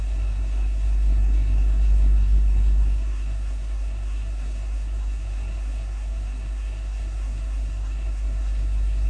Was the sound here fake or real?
fake